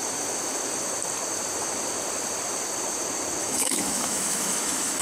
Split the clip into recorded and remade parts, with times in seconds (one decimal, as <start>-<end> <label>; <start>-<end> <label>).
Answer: 0.0-3.4 recorded; 3.4-5.0 remade